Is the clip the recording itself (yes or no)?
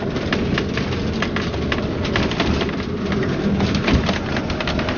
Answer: yes